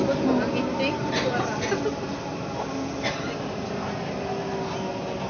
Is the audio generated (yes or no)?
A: no